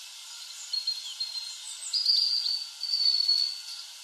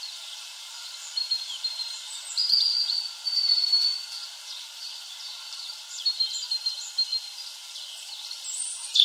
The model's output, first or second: second